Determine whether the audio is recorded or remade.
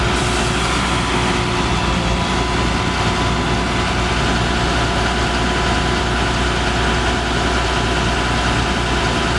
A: recorded